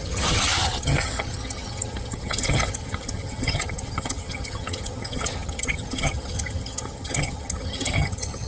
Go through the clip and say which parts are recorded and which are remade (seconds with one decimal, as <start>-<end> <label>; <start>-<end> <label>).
0.0-8.5 remade